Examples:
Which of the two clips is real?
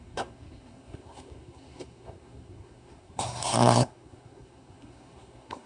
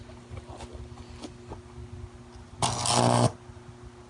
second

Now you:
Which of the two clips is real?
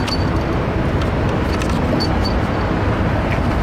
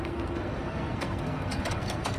first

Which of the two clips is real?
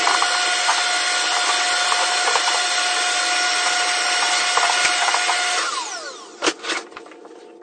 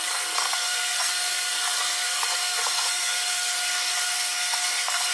first